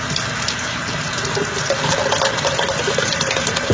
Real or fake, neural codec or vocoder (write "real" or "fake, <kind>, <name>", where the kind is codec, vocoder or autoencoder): real